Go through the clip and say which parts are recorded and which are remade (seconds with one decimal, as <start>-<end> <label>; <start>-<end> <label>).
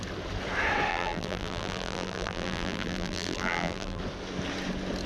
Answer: 0.0-0.9 recorded; 0.9-4.0 remade; 4.0-5.1 recorded